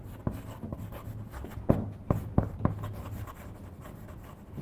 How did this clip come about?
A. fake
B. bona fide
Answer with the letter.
B